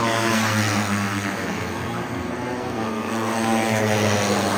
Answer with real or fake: fake